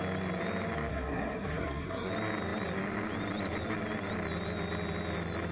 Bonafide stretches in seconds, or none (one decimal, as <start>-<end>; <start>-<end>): 0.0-0.9; 2.1-5.5